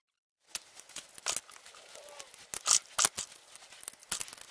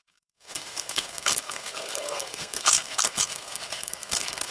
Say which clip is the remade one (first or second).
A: second